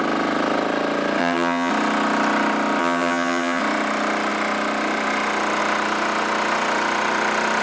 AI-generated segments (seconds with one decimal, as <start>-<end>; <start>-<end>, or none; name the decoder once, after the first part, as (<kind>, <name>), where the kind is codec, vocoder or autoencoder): 1.2-1.7 (vocoder, HiFi-GAN); 2.8-3.6